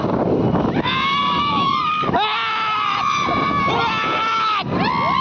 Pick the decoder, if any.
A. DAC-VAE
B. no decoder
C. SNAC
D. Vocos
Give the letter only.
B